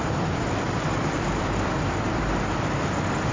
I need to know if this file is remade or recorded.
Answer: remade